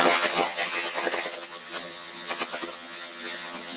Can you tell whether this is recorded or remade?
remade